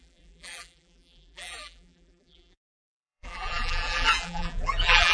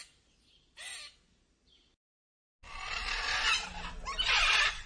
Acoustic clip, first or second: second